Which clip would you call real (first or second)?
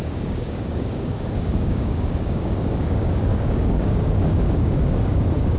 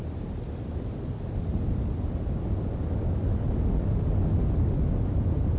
second